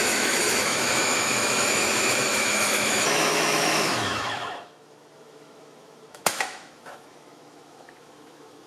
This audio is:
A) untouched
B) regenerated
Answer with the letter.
B